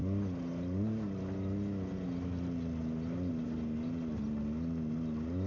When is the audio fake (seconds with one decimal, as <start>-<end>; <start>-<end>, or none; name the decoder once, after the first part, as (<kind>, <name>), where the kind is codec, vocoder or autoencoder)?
none